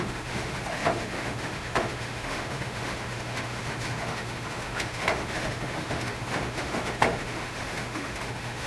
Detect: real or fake fake